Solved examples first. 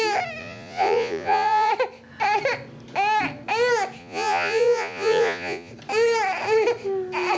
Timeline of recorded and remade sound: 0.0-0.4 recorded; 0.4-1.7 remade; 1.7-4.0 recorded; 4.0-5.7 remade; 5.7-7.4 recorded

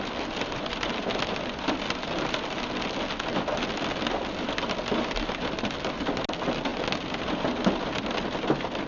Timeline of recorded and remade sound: 0.0-8.9 recorded

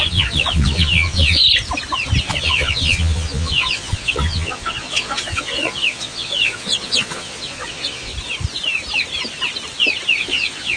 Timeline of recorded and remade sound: 0.0-1.4 remade; 1.4-2.2 recorded; 2.2-8.1 remade; 8.1-10.2 recorded; 10.2-10.8 remade